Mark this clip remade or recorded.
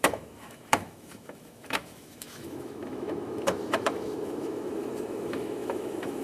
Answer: remade